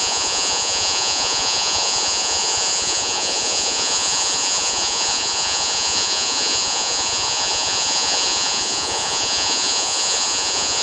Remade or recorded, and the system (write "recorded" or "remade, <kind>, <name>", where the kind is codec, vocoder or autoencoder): remade, vocoder, Vocos